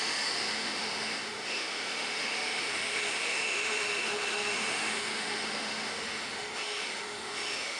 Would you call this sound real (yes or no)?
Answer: no